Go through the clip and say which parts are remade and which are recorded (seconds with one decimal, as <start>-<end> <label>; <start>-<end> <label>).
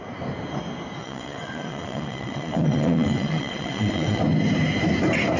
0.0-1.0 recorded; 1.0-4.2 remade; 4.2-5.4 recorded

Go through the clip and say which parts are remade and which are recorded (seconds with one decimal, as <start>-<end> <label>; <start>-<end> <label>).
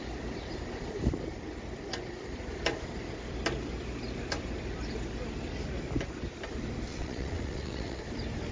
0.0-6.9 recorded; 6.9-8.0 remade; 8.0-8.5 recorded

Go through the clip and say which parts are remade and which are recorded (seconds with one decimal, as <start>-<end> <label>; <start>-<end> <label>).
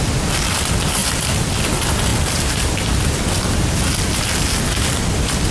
0.0-5.5 recorded